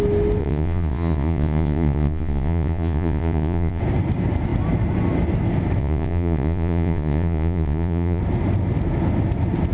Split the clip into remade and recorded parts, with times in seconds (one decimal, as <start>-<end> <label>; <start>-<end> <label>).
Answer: 0.0-0.4 recorded; 0.4-3.8 remade; 3.8-5.8 recorded; 5.8-8.2 remade; 8.2-9.7 recorded